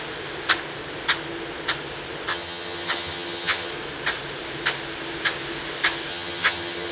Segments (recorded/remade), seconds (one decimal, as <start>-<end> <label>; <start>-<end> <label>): 0.0-2.3 recorded; 2.3-3.7 remade; 3.7-6.1 recorded; 6.1-6.9 remade